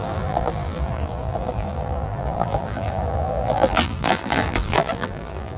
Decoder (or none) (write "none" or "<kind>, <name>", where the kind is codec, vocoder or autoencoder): vocoder, BigVGAN v2